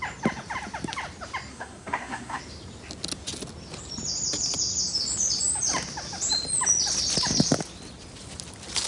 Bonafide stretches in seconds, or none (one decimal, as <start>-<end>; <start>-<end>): 0.0-1.5; 2.4-8.9